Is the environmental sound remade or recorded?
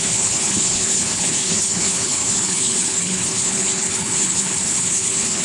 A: remade